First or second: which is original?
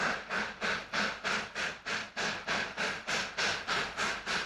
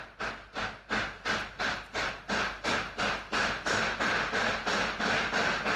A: second